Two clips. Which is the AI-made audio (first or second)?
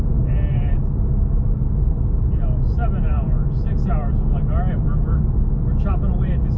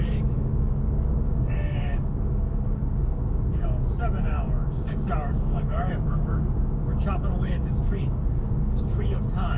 second